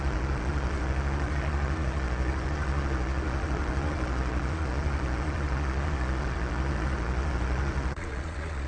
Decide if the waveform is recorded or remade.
remade